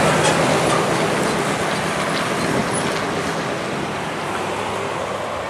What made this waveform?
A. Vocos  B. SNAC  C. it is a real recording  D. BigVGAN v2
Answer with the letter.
C